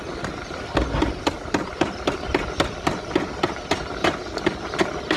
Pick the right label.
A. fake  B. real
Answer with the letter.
B